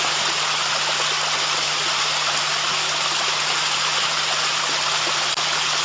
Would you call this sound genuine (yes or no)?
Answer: yes